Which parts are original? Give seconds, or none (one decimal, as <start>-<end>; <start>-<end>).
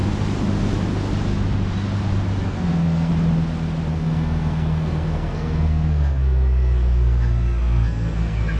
0.0-2.4; 3.1-3.9